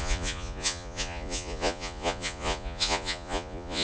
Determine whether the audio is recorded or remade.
remade